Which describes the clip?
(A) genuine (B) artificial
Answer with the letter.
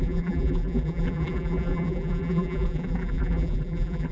B